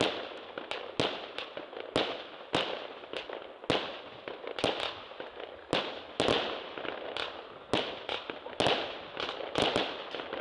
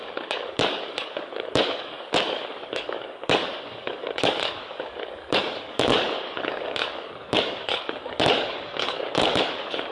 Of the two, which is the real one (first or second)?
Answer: first